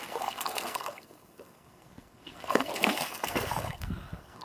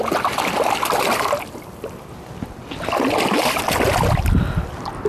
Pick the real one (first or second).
second